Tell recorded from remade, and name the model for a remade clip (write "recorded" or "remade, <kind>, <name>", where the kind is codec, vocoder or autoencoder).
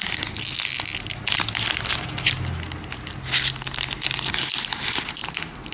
recorded